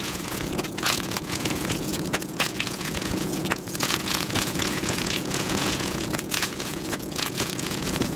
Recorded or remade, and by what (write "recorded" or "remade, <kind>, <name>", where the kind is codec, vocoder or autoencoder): remade, vocoder, Vocos